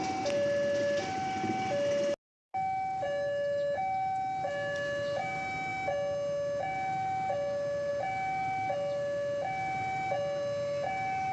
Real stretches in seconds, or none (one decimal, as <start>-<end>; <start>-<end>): 0.0-11.3